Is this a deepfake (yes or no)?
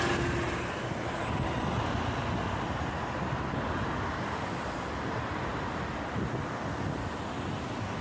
no